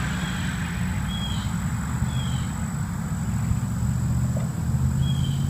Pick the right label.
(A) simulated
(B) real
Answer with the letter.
B